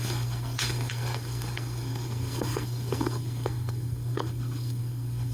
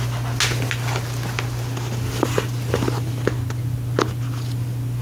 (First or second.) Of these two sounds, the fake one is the first